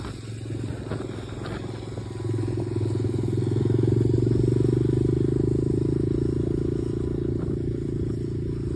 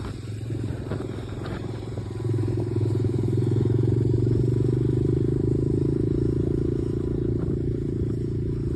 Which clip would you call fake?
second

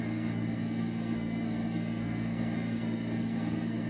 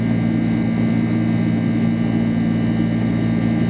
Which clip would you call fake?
first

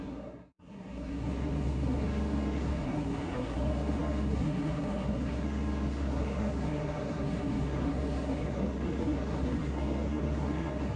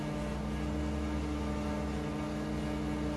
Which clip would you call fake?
first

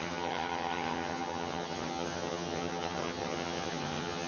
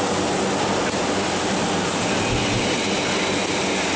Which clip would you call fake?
first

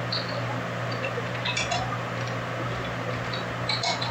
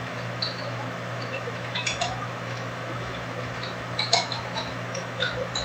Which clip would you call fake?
second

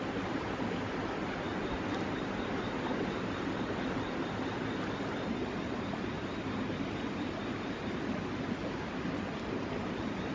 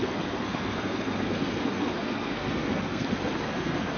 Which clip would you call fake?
second